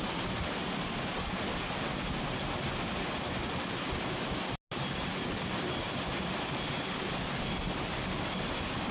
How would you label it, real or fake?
real